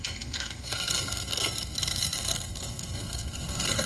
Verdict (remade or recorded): remade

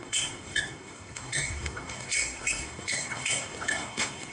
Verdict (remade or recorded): remade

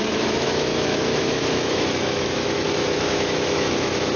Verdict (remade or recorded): remade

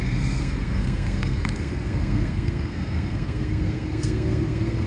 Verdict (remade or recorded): remade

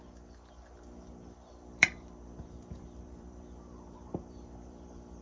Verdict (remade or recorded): remade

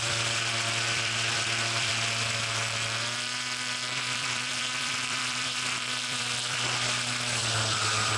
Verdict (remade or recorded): remade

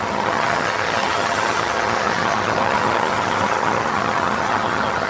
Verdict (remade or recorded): remade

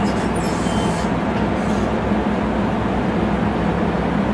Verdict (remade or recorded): recorded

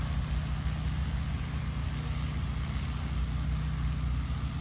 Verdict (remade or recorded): recorded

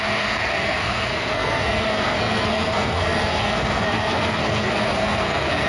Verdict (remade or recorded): remade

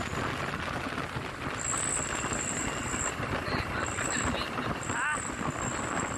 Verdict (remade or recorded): recorded